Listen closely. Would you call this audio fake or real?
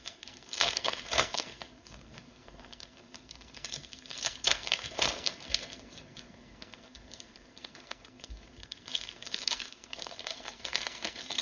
fake